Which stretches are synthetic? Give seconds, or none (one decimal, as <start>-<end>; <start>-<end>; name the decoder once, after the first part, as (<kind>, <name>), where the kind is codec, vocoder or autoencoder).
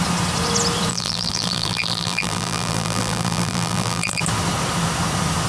0.9-4.2 (vocoder, BigVGAN v2)